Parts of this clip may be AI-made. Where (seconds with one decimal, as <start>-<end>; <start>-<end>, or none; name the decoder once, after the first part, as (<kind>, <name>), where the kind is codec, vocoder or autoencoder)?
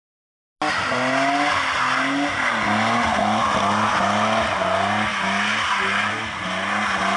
none